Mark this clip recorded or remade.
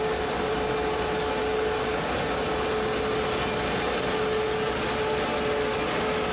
recorded